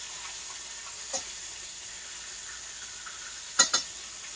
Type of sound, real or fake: real